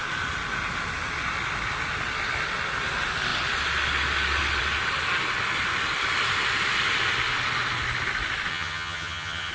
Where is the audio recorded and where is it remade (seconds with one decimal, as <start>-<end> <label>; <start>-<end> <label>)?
0.0-8.5 recorded; 8.5-9.5 remade